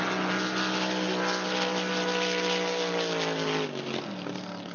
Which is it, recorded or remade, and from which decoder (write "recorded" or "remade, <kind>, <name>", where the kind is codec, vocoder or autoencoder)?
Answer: recorded